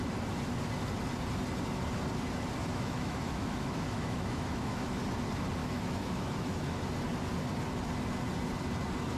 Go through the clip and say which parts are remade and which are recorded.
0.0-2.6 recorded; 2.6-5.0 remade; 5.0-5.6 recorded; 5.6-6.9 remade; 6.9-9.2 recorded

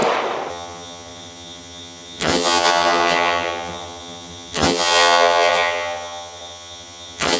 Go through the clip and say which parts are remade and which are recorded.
0.0-0.5 recorded; 0.5-7.4 remade